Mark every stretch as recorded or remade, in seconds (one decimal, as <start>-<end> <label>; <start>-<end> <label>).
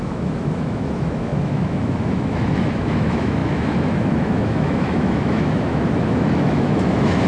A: 0.0-7.3 remade